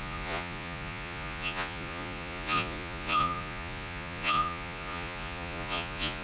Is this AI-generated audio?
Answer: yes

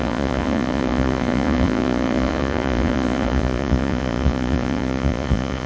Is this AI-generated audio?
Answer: yes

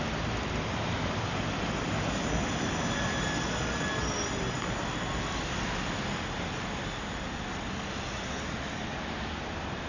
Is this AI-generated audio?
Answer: no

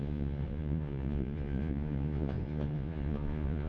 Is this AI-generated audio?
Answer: yes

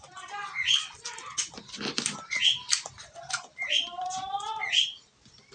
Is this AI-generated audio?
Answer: no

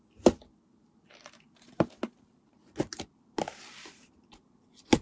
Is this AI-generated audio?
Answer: no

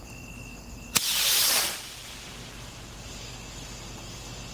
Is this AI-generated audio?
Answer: no